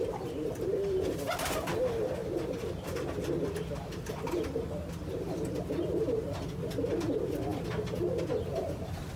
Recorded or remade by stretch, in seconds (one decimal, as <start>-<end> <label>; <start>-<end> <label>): 0.0-9.2 recorded